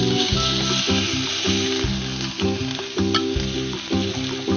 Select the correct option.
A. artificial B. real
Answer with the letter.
B